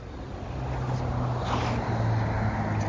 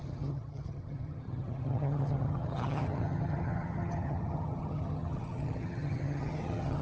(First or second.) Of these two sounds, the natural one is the first